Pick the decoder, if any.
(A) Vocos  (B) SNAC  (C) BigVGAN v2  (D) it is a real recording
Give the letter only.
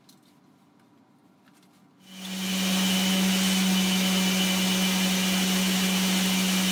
D